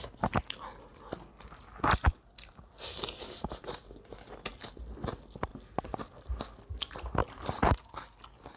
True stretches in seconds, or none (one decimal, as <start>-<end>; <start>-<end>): 0.0-0.9; 3.8-8.6